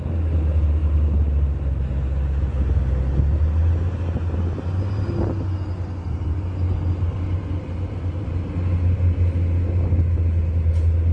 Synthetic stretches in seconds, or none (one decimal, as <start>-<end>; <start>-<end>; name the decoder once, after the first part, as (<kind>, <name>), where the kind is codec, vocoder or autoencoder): none